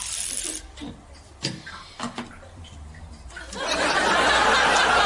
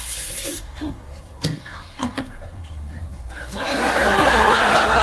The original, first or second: first